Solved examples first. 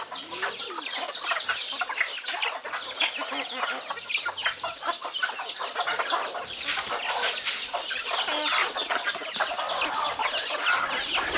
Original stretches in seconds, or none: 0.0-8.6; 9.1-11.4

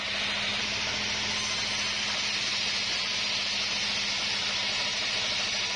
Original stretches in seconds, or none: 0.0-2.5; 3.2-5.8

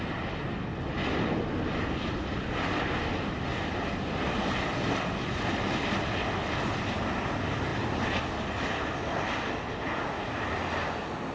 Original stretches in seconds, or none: 0.0-11.3